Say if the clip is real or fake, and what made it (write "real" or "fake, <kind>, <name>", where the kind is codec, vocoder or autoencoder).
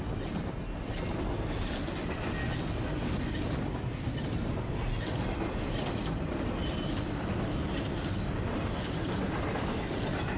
real